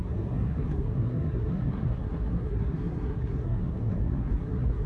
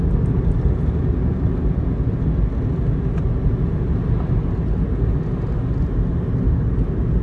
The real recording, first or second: second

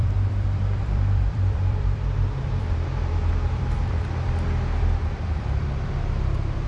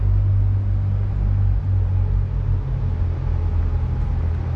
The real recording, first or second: second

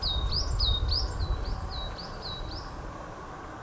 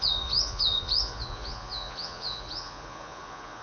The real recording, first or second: first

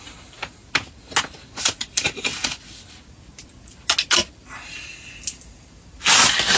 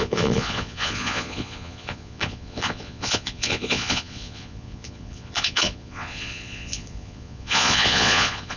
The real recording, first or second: first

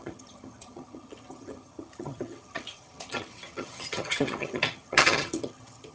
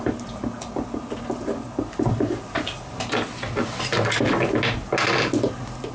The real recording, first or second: second